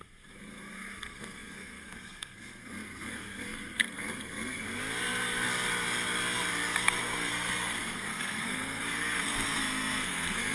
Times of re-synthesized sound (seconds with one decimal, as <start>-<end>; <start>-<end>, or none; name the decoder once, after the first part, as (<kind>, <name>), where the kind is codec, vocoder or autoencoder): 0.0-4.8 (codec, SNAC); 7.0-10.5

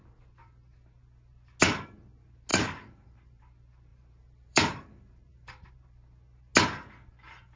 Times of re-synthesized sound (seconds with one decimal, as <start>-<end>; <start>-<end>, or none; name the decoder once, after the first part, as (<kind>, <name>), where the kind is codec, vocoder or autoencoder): 2.5-3.4 (vocoder, BigVGAN v2); 3.9-5.7

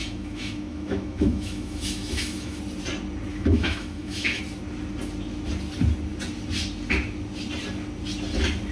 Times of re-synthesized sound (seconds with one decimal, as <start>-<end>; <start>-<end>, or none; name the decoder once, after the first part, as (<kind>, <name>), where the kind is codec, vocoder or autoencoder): 0.0-2.6 (autoencoder, DAC-VAE); 3.3-4.4

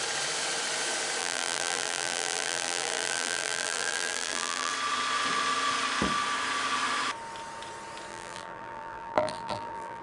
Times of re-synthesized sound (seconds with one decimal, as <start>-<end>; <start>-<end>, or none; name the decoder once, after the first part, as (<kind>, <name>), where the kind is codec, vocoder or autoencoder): 1.2-4.7 (vocoder, BigVGAN v2); 8.1-10.0

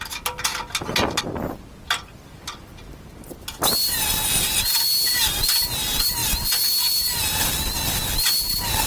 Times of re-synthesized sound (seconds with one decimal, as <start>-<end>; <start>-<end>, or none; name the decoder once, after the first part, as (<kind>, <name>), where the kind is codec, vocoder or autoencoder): none

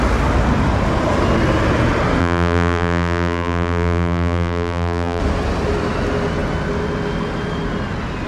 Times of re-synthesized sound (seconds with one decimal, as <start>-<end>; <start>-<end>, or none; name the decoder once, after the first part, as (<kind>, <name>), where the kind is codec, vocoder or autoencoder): 2.2-5.2 (vocoder, BigVGAN v2)

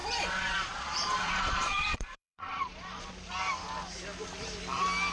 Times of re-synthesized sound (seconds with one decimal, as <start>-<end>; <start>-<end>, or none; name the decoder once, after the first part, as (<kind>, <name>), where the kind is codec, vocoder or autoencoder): 0.0-3.1 (vocoder, Vocos)

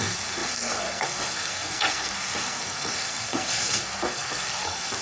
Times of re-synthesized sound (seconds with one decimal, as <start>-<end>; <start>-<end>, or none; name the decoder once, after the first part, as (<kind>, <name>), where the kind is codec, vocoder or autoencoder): 0.0-5.0 (codec, SNAC)